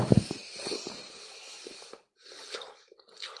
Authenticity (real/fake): real